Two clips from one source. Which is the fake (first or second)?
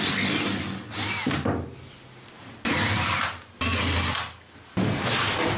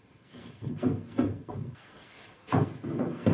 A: second